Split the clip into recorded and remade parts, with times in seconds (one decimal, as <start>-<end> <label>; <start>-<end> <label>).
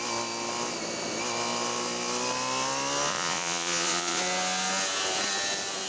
0.0-3.1 recorded; 3.1-4.2 remade; 4.2-5.9 recorded